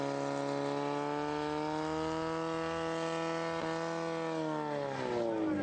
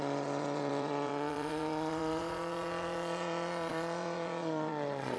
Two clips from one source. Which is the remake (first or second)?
second